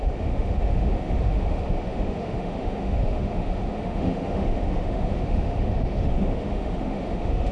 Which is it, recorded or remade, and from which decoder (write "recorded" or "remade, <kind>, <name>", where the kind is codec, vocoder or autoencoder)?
remade, autoencoder, DAC-VAE